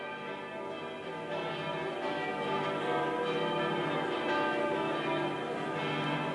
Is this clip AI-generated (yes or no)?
no